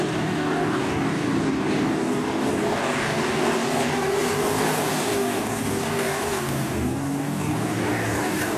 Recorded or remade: remade